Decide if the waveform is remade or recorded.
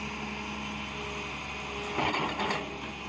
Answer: recorded